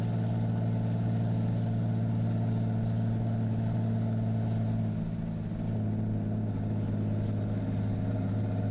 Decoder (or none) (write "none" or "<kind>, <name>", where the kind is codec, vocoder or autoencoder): none